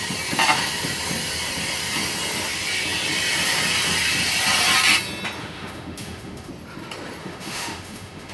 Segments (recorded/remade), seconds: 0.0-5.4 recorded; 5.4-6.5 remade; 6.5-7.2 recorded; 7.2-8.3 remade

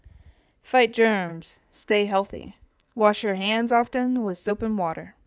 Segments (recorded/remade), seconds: 0.0-1.3 recorded; 1.3-4.5 remade; 4.5-5.3 recorded

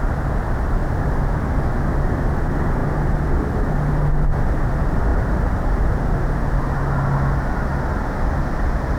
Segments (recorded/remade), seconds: 0.0-0.8 recorded; 0.8-1.3 remade; 1.3-5.1 recorded; 5.1-5.7 remade; 5.7-9.0 recorded

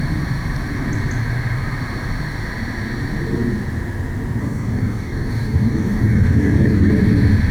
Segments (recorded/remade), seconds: 0.0-4.4 recorded; 4.4-6.9 remade; 6.9-7.5 recorded